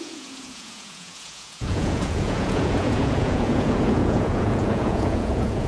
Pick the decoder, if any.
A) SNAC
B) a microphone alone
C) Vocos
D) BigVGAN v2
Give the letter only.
C